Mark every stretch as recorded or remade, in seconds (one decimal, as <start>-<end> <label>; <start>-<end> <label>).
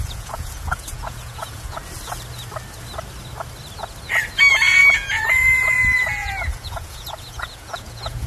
0.0-1.8 remade; 1.8-4.4 recorded; 4.4-8.3 remade